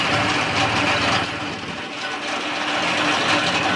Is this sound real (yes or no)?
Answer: yes